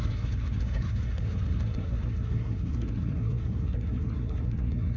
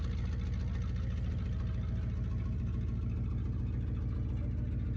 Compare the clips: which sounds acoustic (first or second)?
second